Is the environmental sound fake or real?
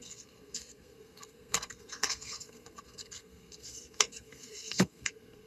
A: fake